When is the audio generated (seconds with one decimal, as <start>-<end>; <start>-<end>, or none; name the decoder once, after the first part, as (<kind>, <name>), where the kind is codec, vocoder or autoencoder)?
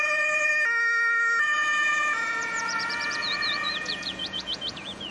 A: 0.0-0.5 (vocoder, Vocos); 1.4-5.1